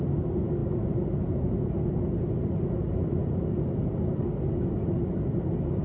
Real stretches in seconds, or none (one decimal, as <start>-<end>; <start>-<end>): 0.0-5.8